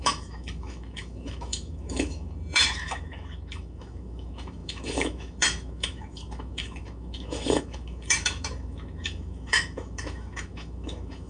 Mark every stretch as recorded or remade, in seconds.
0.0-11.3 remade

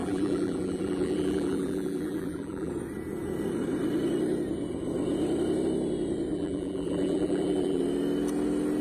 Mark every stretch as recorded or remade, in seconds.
0.0-2.7 remade; 2.7-6.3 recorded; 6.3-7.8 remade; 7.8-8.8 recorded

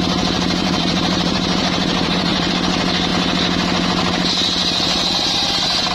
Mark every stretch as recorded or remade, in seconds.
0.0-0.6 recorded; 0.6-2.5 remade; 2.5-5.9 recorded

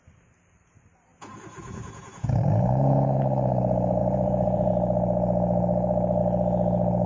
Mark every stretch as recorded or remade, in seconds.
0.0-1.1 recorded; 1.1-3.2 remade; 3.2-4.0 recorded; 4.0-4.7 remade; 4.7-7.1 recorded

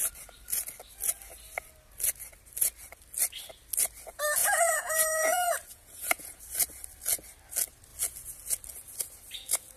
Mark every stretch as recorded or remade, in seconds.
0.0-4.4 recorded; 4.4-6.4 remade; 6.4-9.8 recorded

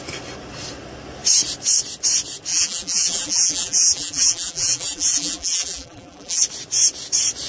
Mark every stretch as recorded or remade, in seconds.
0.0-2.5 recorded; 2.5-6.4 remade; 6.4-7.5 recorded

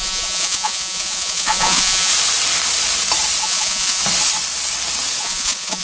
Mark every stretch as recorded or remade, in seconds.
0.0-2.1 remade; 2.1-3.4 recorded; 3.4-4.0 remade; 4.0-5.2 recorded; 5.2-5.8 remade

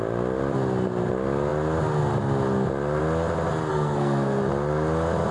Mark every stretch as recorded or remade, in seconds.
0.0-3.7 recorded; 3.7-4.4 remade; 4.4-5.3 recorded